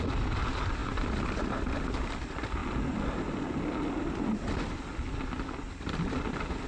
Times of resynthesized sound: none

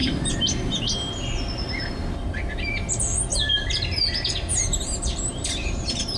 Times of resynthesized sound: 0.0-1.1 (vocoder, BigVGAN v2); 3.3-6.2

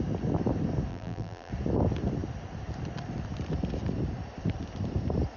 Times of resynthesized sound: 0.9-1.5 (vocoder, BigVGAN v2)

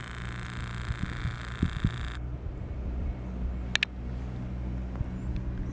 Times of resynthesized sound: none

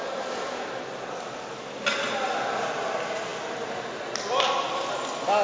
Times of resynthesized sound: none

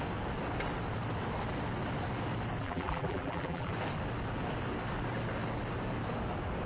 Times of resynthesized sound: 2.6-3.7 (vocoder, BigVGAN v2)

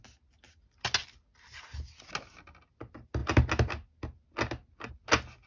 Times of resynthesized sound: none

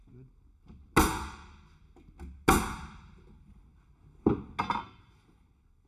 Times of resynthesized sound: none